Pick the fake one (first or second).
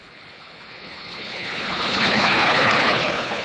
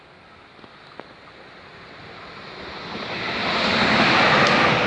first